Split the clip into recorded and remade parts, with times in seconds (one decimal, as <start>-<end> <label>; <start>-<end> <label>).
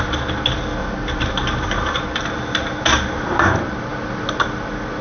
0.0-0.8 recorded; 0.8-2.2 remade; 2.2-5.0 recorded